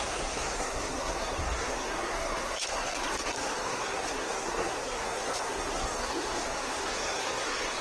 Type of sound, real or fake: fake